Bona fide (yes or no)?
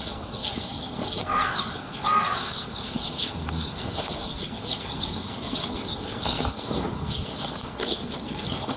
no